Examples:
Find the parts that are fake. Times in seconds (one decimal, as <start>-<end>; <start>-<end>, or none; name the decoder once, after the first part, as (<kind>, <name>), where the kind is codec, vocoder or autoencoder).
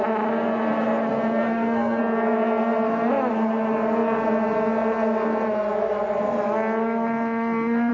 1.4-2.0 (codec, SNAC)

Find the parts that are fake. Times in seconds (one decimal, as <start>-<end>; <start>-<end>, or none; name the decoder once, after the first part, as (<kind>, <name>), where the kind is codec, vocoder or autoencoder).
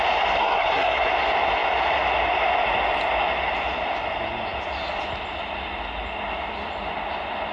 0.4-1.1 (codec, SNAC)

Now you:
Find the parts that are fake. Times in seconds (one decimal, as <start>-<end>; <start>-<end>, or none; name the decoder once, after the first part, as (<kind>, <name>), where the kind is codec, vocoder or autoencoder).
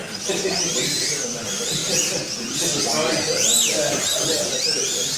none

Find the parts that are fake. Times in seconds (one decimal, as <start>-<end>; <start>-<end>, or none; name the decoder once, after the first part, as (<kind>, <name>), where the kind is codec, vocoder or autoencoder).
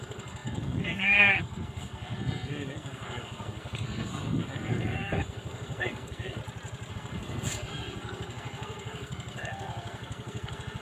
0.0-6.4 (codec, SNAC); 6.9-10.8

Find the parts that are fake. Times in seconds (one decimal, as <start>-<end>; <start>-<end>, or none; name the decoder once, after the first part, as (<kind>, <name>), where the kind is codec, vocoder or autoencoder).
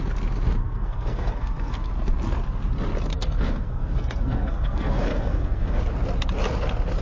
0.6-1.9 (codec, SNAC); 3.1-5.8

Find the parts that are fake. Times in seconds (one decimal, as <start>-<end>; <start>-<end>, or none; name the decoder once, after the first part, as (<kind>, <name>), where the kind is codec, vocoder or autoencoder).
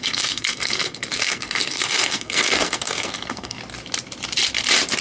0.0-3.6 (codec, SNAC)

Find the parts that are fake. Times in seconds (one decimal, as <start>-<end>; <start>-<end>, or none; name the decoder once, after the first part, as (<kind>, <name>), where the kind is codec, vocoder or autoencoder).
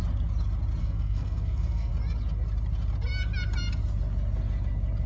0.8-1.9 (codec, SNAC)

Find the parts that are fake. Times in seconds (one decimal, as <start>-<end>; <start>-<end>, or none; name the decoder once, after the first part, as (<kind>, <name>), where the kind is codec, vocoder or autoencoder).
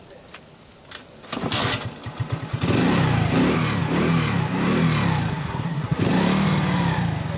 5.3-6.0 (codec, SNAC)